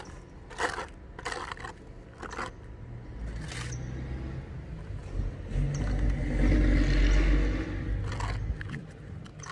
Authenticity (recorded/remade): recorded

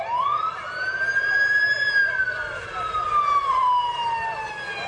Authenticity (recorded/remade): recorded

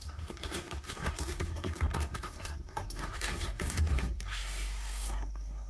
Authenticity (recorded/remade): remade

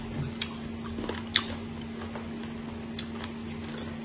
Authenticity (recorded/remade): recorded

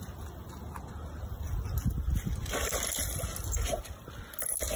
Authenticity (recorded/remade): recorded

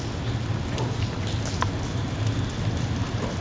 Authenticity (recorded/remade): recorded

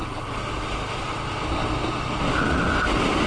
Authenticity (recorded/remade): recorded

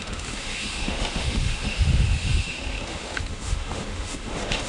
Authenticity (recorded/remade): remade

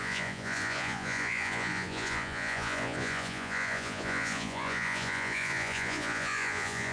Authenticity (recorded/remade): remade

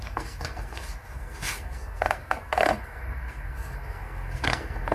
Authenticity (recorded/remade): remade